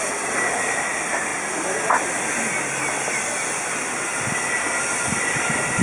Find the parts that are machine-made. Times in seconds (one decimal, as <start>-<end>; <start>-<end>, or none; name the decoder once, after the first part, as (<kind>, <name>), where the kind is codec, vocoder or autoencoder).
none